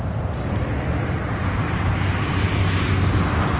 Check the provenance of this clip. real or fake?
real